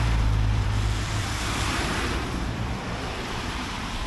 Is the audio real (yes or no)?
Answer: no